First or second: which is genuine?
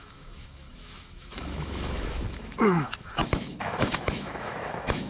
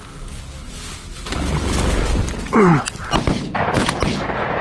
second